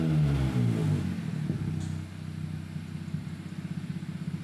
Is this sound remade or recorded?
recorded